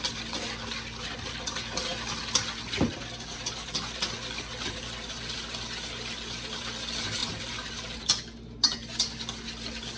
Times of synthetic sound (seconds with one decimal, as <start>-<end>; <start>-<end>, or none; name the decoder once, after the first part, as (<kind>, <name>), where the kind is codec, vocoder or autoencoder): none